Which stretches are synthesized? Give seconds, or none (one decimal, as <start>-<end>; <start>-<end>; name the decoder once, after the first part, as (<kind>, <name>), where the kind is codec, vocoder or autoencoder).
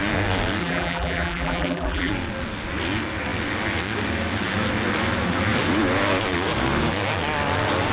0.6-2.1 (vocoder, BigVGAN v2)